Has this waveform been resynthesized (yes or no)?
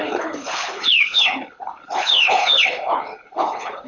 yes